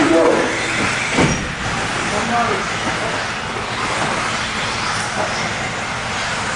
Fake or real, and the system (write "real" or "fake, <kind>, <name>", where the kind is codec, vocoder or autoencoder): real